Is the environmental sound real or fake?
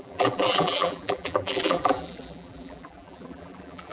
fake